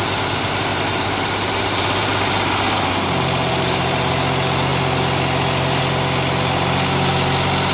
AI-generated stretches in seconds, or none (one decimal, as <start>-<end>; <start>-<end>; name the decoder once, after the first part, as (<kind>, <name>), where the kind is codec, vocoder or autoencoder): 0.7-4.1 (vocoder, BigVGAN v2)